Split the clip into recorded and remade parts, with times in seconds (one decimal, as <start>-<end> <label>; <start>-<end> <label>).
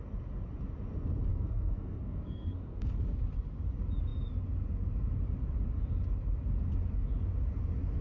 0.0-1.3 recorded; 1.3-2.9 remade; 2.9-8.0 recorded